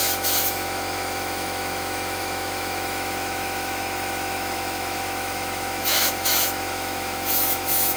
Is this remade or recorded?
remade